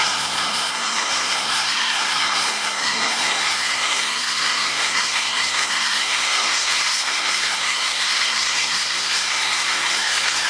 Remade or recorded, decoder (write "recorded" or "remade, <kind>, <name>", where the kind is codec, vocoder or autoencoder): remade, codec, SNAC